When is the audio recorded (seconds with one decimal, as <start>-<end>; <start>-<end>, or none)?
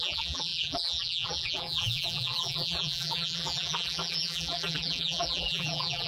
none